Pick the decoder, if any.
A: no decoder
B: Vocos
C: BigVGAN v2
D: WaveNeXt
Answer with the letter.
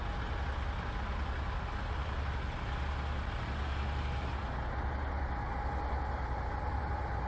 A